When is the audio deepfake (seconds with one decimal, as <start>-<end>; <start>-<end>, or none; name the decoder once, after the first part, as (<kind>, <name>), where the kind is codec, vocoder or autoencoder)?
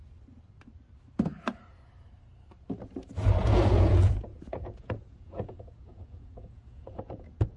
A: 3.4-7.6 (vocoder, Vocos)